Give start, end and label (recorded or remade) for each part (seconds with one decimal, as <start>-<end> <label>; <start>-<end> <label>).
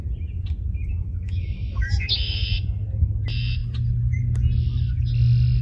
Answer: 0.0-0.9 recorded; 0.9-2.5 remade; 2.5-5.6 recorded